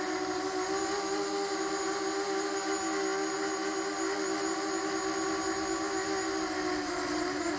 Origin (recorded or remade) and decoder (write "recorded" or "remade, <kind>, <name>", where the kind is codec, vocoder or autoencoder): recorded